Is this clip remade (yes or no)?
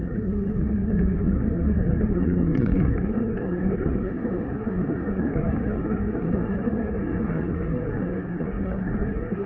yes